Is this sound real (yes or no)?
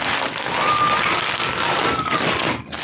yes